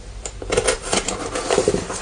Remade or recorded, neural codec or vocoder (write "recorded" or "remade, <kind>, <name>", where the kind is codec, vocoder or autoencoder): recorded